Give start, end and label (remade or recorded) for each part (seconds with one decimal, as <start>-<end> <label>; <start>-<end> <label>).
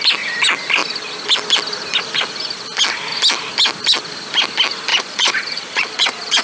0.0-4.9 recorded; 4.9-6.4 remade